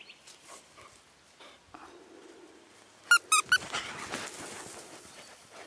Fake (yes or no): no